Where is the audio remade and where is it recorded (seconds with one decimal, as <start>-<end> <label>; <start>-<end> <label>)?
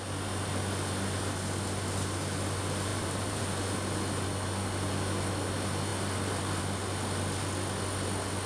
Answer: 0.0-2.9 recorded; 2.9-3.4 remade; 3.4-8.5 recorded